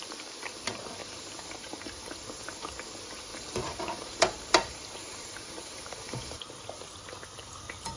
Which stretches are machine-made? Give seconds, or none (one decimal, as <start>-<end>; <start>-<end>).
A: 1.0-2.2; 3.3-6.5